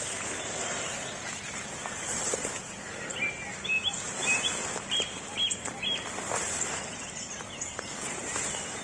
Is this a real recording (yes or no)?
yes